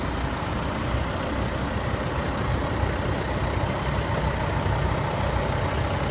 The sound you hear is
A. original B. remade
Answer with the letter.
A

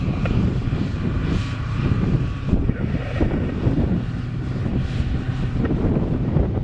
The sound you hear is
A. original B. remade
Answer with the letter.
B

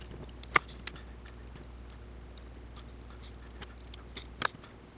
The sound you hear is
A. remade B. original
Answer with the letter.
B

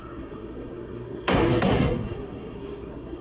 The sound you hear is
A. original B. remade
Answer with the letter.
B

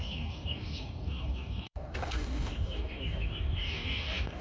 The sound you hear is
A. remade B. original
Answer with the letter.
A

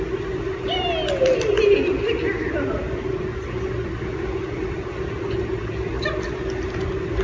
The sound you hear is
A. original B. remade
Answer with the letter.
A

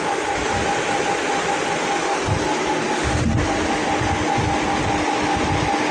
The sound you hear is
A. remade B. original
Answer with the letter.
B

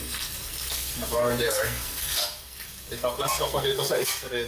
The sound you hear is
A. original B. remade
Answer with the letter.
B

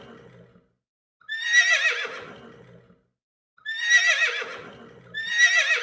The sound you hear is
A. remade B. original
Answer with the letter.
B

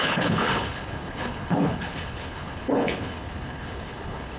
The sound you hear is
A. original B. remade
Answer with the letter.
B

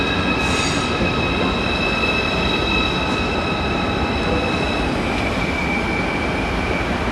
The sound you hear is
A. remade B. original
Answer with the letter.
B